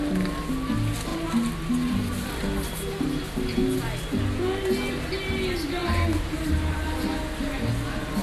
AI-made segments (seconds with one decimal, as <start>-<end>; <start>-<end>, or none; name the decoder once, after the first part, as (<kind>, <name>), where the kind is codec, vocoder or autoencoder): 1.1-2.3 (vocoder, BigVGAN v2); 5.8-6.9